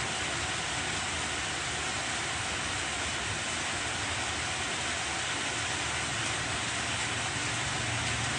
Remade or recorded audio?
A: recorded